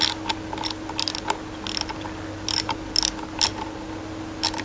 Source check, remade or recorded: recorded